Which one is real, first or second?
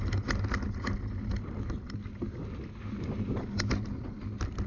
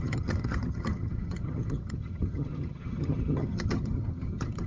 first